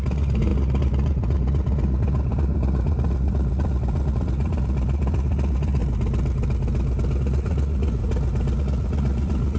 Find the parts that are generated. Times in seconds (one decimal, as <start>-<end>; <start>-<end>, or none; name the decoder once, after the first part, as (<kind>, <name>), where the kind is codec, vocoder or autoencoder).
0.0-5.8 (vocoder, Vocos); 7.2-8.0; 8.6-9.6